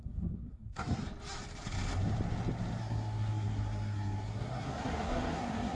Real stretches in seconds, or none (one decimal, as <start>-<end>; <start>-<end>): 1.0-2.8